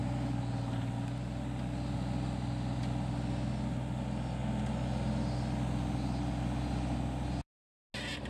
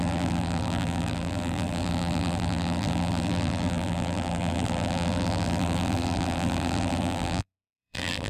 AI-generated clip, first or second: second